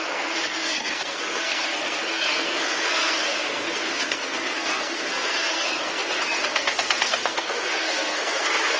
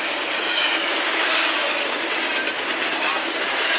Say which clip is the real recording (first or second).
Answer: second